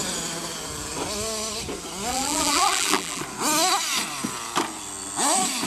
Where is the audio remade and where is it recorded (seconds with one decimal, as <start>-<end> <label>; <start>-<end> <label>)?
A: 0.0-2.1 recorded; 2.1-3.2 remade; 3.2-5.7 recorded